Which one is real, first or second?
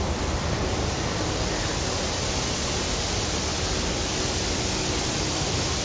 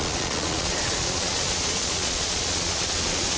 first